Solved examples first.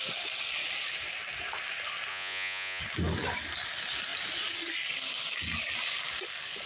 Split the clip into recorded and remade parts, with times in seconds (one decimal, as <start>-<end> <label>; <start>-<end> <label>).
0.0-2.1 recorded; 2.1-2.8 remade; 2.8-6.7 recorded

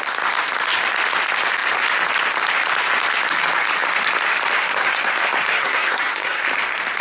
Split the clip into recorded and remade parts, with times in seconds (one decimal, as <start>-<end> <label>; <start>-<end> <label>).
0.0-4.6 recorded; 4.6-5.1 remade; 5.1-5.5 recorded; 5.5-6.4 remade; 6.4-7.0 recorded

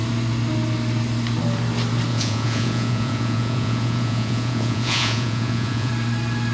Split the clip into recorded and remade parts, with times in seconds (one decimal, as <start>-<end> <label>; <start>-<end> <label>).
0.0-2.1 recorded; 2.1-5.9 remade; 5.9-6.5 recorded

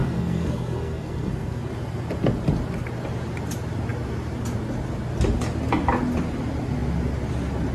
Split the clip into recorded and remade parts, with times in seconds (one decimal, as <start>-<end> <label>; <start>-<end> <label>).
0.0-1.7 remade; 1.7-7.7 recorded

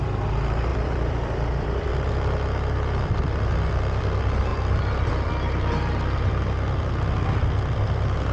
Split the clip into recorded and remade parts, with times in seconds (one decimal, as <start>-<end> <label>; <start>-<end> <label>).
0.0-0.7 recorded; 0.7-1.9 remade; 1.9-4.5 recorded; 4.5-5.3 remade; 5.3-8.3 recorded

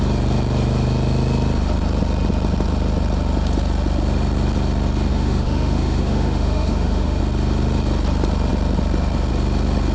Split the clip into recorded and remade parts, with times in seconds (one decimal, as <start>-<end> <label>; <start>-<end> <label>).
0.0-5.1 recorded; 5.1-7.2 remade; 7.2-9.9 recorded

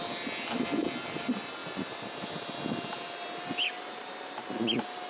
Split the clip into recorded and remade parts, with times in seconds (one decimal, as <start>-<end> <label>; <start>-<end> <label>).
0.0-5.1 recorded